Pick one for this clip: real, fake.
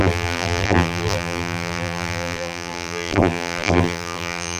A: fake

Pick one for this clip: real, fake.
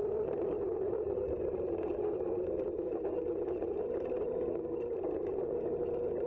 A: fake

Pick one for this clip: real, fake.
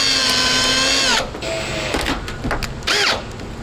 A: real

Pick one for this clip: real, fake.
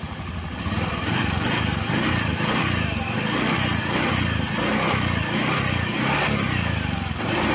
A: real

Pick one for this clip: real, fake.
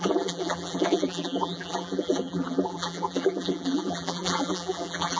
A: fake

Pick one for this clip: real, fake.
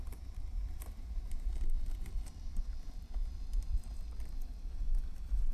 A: fake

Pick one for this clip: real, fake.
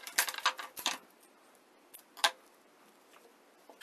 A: real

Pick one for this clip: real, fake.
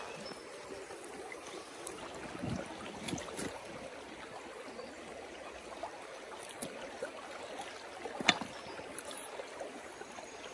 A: real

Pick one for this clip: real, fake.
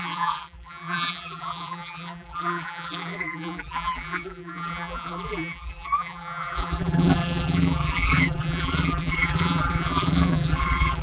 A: fake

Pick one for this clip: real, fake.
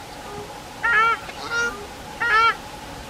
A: real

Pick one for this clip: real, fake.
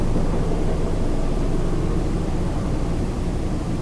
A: fake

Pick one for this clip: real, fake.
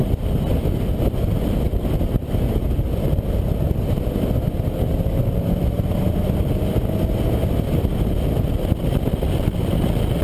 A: real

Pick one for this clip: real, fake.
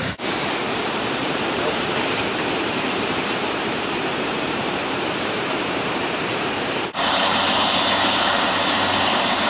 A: fake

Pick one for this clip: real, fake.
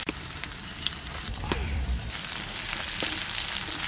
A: fake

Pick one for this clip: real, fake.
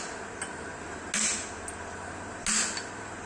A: real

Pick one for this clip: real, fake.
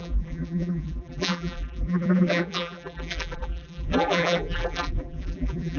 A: fake